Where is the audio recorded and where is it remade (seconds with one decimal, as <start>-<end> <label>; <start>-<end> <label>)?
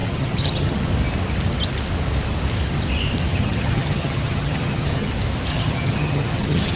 0.0-0.9 remade; 0.9-3.3 recorded; 3.3-5.1 remade; 5.1-5.5 recorded; 5.5-6.8 remade